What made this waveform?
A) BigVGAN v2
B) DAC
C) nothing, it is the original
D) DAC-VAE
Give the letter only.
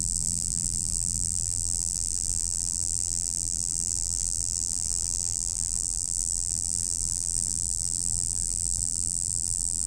A